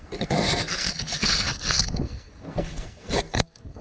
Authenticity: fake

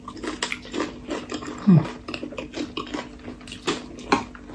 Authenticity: real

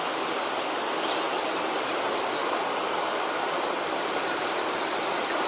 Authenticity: real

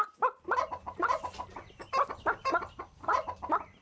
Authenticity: real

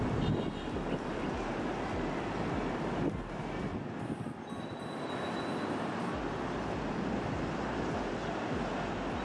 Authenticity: real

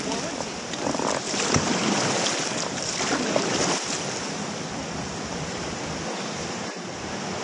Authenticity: real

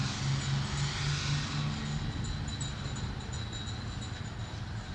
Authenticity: real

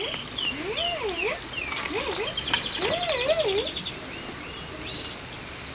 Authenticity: real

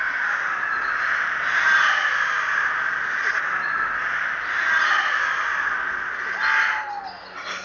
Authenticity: real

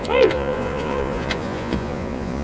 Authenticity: fake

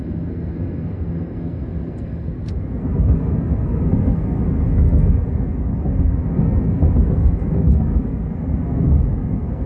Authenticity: fake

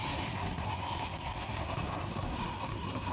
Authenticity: fake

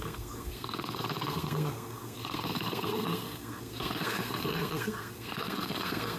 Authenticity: fake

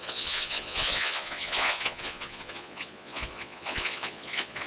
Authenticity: fake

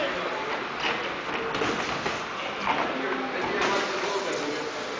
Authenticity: real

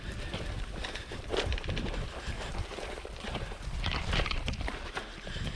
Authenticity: fake